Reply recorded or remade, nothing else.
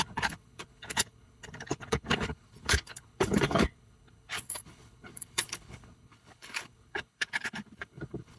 remade